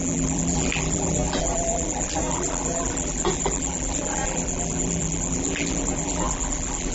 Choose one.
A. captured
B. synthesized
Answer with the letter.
B